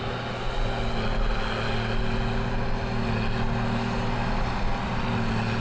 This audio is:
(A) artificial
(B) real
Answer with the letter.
B